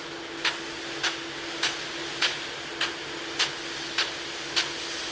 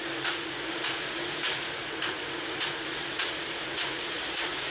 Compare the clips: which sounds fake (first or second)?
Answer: second